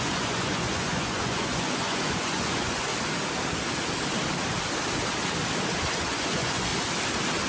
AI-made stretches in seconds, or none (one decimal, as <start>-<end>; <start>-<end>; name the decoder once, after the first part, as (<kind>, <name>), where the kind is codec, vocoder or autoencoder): 0.0-2.9 (vocoder, Vocos); 5.9-6.7